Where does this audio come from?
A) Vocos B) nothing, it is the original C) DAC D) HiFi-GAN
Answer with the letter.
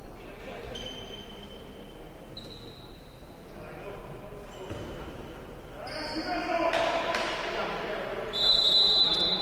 B